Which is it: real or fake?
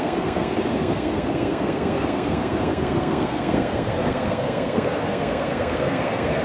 fake